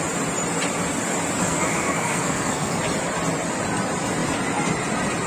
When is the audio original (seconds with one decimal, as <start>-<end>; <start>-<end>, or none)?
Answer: 0.0-1.4; 2.8-5.3